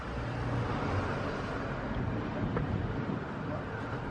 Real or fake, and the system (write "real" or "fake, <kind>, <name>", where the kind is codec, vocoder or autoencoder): real